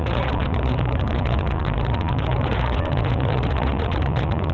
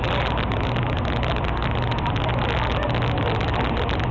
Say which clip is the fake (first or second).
first